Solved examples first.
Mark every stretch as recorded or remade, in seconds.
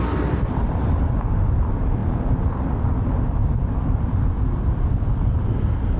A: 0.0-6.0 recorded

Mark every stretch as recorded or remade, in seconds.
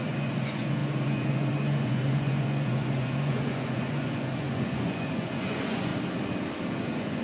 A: 0.0-5.9 remade; 5.9-6.8 recorded; 6.8-7.2 remade